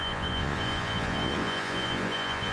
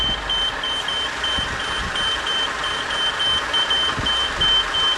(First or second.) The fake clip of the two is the first